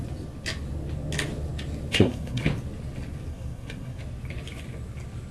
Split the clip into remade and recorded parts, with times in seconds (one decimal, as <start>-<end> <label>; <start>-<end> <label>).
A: 0.0-1.9 recorded; 1.9-2.4 remade; 2.4-3.3 recorded; 3.3-4.0 remade; 4.0-5.3 recorded